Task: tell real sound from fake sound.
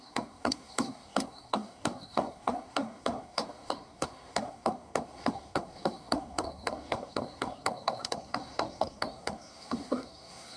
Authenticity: fake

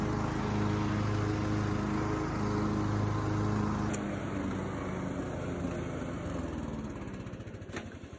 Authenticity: real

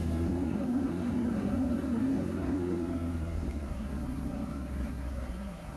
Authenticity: fake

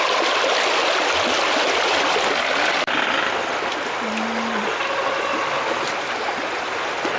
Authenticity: real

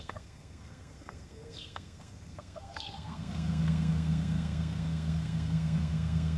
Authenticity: fake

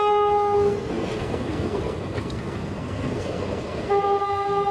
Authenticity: fake